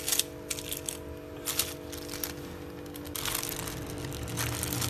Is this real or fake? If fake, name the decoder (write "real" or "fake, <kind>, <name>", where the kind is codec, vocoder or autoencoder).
real